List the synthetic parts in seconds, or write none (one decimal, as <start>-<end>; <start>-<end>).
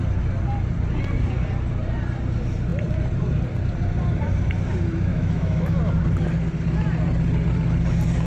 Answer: 5.1-5.8